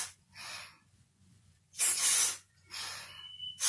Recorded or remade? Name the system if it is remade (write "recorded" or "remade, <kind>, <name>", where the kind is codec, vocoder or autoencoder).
remade, vocoder, Vocos